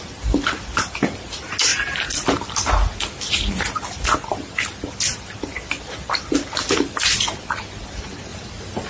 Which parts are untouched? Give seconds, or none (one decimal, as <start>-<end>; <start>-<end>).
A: 0.0-8.3